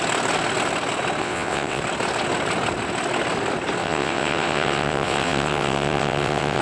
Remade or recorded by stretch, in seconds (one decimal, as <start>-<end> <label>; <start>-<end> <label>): 0.0-1.2 recorded; 1.2-1.8 remade; 1.8-3.8 recorded; 3.8-6.6 remade